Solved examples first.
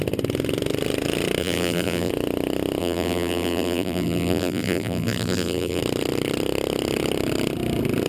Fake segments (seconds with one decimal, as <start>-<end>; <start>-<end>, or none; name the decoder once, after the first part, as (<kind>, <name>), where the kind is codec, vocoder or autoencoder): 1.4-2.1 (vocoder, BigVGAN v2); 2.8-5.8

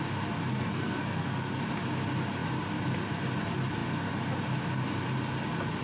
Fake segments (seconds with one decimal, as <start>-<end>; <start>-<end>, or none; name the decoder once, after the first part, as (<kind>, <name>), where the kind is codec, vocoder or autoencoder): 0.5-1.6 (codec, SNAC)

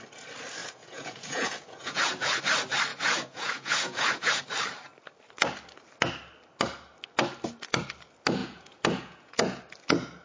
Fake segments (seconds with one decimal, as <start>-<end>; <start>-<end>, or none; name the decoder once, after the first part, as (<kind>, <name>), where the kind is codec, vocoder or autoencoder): 0.6-2.4 (vocoder, Vocos); 2.9-4.4; 8.4-9.6

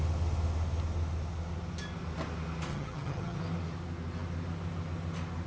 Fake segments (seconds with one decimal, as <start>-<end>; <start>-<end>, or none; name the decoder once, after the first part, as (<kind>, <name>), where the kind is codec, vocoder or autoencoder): 2.7-3.4 (vocoder, HiFi-GAN)

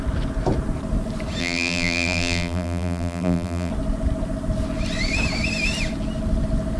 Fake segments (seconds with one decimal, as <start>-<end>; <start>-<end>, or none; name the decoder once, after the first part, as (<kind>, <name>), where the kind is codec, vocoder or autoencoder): 1.4-3.7 (vocoder, BigVGAN v2)

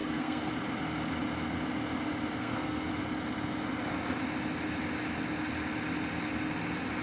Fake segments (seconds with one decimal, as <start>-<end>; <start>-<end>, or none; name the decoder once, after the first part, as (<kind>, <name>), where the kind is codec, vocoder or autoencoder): 0.0-0.5 (codec, SNAC); 2.4-2.9